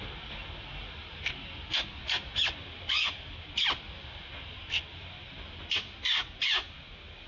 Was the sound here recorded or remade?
recorded